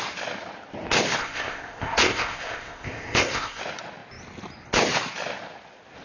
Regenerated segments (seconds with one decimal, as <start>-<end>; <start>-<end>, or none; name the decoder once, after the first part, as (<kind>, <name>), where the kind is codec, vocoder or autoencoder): 1.2-3.6 (codec, ZipCodec)